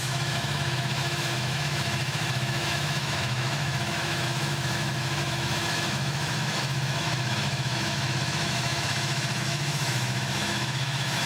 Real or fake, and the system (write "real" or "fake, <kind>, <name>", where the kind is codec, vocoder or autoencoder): fake, autoencoder, DAC-VAE